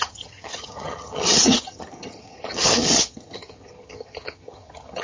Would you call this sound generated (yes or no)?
yes